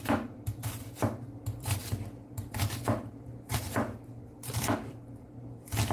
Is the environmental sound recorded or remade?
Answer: remade